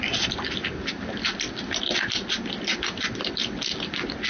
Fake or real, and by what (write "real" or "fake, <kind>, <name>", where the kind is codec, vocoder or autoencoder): real